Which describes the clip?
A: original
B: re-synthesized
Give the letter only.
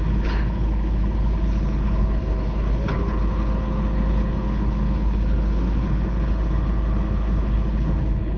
B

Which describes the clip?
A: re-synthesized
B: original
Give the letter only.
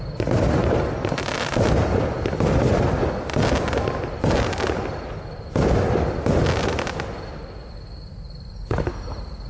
B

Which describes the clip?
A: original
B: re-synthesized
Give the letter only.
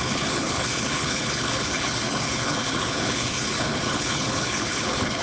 B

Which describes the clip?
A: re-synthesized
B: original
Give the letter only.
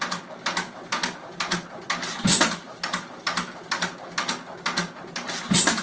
B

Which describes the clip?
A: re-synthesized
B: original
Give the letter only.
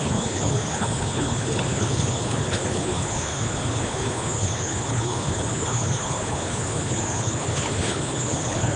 A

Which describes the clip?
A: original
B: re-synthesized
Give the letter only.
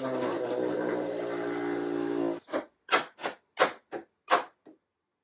A